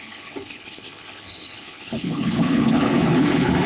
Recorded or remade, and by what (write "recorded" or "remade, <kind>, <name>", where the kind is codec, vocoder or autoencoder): remade, codec, HILCodec